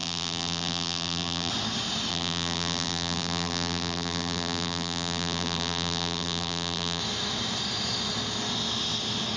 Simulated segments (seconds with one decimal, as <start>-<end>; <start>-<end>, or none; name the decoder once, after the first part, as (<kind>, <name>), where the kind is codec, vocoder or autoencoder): 0.0-1.5 (vocoder, BigVGAN v2); 2.1-7.0